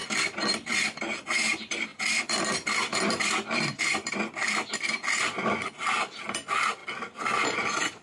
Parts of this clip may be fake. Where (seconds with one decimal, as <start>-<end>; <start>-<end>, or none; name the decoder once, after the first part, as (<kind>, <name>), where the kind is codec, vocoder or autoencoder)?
none